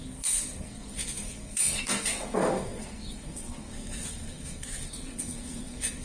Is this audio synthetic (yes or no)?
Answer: yes